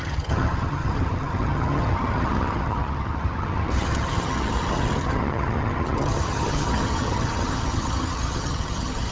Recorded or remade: remade